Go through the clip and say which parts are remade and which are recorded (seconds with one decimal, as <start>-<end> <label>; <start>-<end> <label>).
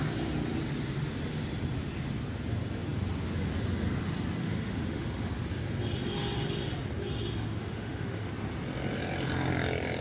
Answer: 0.0-4.4 recorded; 4.4-5.3 remade; 5.3-7.6 recorded; 7.6-8.3 remade; 8.3-10.0 recorded